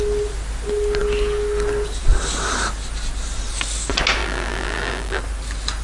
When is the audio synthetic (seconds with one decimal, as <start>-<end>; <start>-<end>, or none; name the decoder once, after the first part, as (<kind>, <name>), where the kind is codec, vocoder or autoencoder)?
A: 4.2-5.2 (vocoder, BigVGAN v2)